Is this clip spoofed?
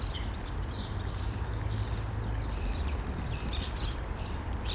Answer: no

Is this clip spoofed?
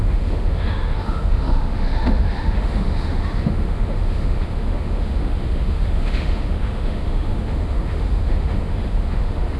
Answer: yes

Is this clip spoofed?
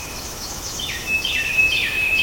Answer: yes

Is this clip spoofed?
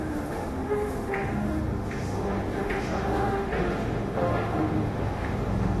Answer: yes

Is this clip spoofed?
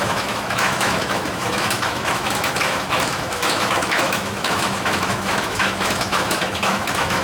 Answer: yes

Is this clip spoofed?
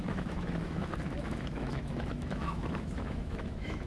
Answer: yes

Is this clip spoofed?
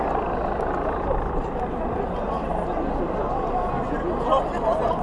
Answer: no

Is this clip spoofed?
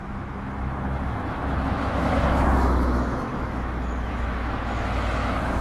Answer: yes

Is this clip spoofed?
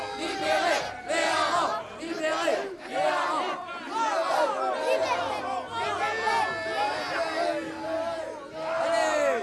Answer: no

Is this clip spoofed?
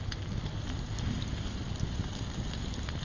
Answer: no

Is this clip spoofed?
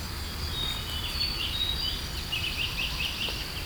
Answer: no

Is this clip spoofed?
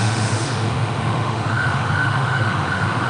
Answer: yes